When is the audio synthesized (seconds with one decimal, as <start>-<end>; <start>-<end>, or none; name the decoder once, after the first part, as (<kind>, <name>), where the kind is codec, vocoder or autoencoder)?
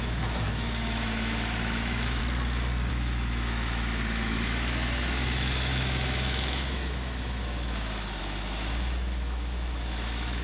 0.0-2.2 (autoencoder, DAC-VAE); 2.9-10.4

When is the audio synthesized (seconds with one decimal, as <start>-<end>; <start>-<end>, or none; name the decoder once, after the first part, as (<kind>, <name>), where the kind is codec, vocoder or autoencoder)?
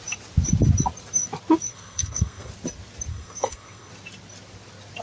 1.7-2.5 (codec, SNAC); 3.1-3.9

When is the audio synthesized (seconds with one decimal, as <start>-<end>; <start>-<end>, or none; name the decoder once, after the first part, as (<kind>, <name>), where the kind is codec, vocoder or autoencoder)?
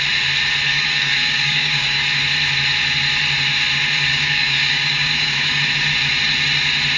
0.7-2.0 (codec, DAC); 4.1-5.6